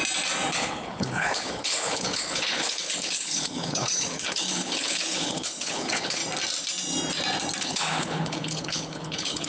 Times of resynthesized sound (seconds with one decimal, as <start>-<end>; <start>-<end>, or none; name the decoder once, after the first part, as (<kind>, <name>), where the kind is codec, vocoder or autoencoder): 0.5-6.2 (codec, HILCodec); 7.6-9.5